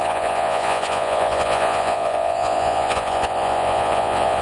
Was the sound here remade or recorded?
remade